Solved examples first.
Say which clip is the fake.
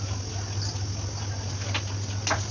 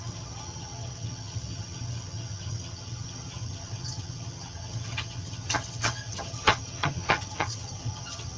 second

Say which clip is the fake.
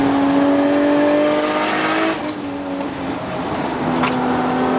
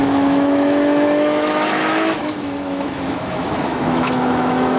second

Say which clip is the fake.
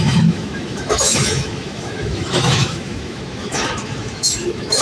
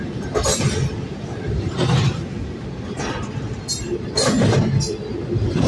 first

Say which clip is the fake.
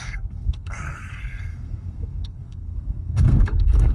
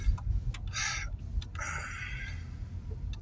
first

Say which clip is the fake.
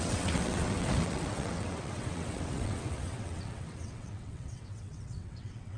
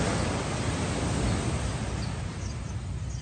first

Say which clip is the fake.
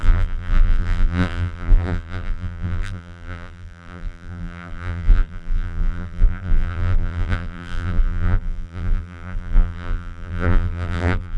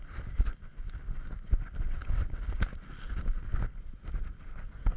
first